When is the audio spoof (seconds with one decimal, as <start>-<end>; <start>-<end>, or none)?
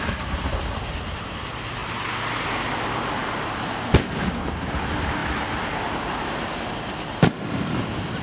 none